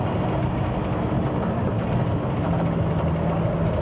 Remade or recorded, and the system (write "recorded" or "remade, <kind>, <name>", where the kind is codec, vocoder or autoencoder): recorded